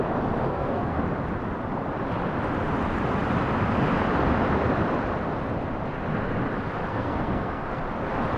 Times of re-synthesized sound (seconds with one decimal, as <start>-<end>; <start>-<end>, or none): 0.5-1.0; 6.9-7.8